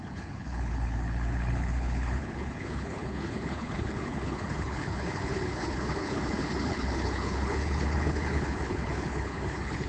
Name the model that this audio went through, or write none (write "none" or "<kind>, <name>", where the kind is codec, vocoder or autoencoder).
codec, HILCodec